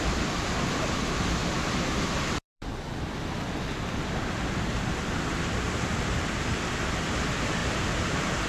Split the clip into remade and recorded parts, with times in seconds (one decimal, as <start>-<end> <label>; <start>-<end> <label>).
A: 0.0-1.4 recorded; 1.4-2.9 remade; 2.9-7.6 recorded; 7.6-8.5 remade